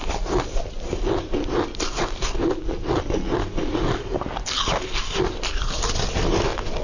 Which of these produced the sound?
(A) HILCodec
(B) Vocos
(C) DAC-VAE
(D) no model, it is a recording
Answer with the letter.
D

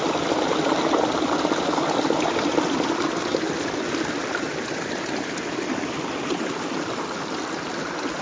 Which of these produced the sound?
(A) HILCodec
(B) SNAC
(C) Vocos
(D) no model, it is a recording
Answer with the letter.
D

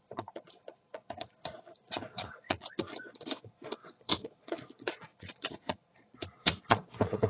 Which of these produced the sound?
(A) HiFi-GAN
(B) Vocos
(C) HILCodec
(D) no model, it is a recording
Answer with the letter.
B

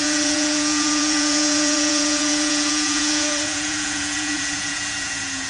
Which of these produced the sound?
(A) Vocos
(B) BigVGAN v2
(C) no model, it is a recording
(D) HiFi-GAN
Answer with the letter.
A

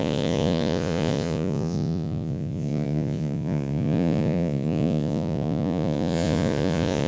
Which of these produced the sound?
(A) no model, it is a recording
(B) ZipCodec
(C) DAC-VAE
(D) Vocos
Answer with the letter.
D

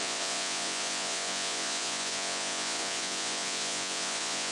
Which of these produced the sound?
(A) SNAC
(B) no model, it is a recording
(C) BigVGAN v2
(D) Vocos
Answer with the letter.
D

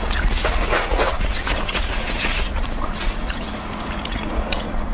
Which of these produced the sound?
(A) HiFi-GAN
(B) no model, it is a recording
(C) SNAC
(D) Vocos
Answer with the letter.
D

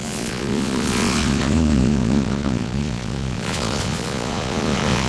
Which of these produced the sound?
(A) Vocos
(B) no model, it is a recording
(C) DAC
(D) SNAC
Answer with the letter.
A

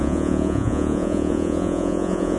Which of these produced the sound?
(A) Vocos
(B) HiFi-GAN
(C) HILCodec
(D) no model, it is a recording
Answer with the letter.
A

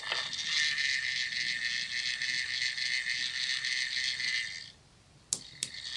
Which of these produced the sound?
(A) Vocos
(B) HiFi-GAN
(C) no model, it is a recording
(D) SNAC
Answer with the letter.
C